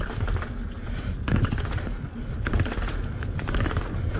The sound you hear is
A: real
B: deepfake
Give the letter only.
A